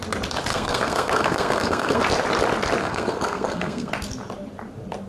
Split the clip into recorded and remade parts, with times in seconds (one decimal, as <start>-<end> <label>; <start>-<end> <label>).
0.0-0.5 recorded; 0.5-2.0 remade; 2.0-2.8 recorded; 2.8-3.9 remade; 3.9-5.1 recorded